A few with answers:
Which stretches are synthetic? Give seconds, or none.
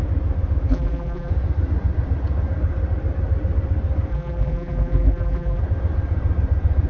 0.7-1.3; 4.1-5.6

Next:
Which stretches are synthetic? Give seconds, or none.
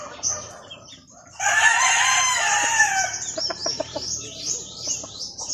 0.0-1.0; 2.1-5.5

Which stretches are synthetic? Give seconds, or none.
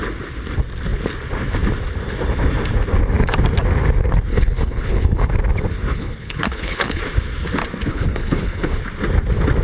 4.3-5.3; 5.9-7.0; 7.9-8.8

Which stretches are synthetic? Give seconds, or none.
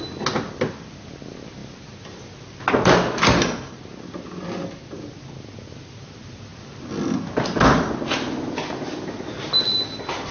none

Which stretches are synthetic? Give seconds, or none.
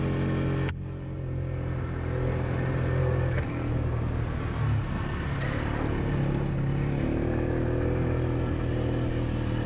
3.0-3.7